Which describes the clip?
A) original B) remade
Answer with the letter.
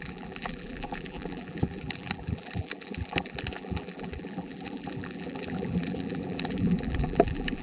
B